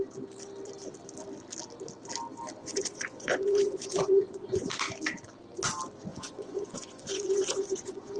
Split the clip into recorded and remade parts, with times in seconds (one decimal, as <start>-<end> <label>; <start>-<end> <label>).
0.0-2.6 recorded; 2.6-4.7 remade; 4.7-6.1 recorded; 6.1-8.2 remade